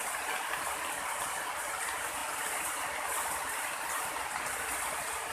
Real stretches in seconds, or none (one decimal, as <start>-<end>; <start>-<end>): 0.0-5.3